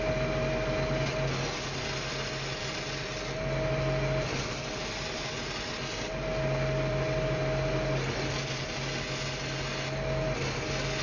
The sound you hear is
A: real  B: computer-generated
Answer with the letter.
A